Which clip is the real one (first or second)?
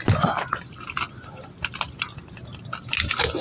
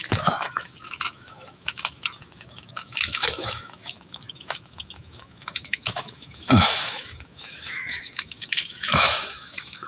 first